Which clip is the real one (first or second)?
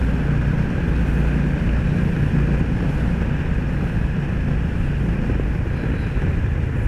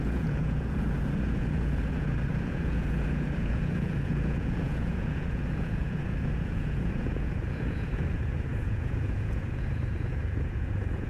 first